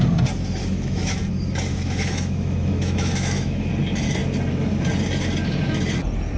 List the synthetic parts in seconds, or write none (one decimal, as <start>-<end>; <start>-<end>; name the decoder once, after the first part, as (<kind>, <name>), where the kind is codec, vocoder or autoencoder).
0.6-1.2 (autoencoder, DAC-VAE); 1.7-3.7